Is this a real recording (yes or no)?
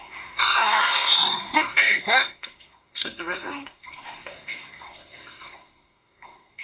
no